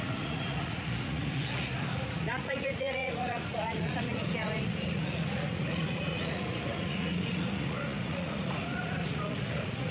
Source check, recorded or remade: remade